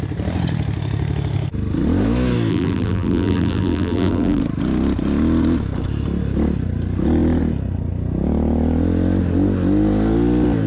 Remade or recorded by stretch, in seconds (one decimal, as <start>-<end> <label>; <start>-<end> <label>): 0.0-2.5 recorded; 2.5-4.4 remade; 4.4-10.7 recorded

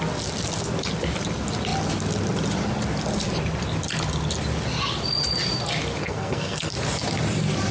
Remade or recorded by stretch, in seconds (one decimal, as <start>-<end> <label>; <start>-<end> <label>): 0.0-6.0 recorded; 6.0-6.7 remade; 6.7-7.7 recorded

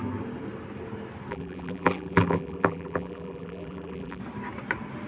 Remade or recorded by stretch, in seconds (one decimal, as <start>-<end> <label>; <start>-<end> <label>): 0.0-1.3 recorded; 1.3-4.2 remade; 4.2-5.1 recorded

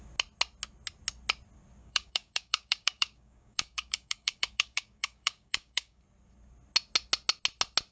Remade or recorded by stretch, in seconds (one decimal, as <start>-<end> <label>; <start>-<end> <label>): 0.0-1.8 recorded; 1.8-6.0 remade; 6.0-7.9 recorded

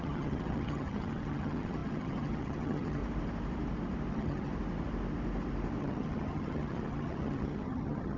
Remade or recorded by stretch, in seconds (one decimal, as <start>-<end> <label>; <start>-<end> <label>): 0.0-3.0 remade; 3.0-4.1 recorded; 4.1-4.5 remade; 4.5-5.8 recorded; 5.8-8.2 remade